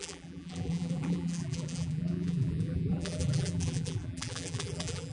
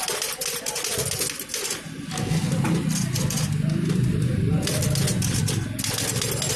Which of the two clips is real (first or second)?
second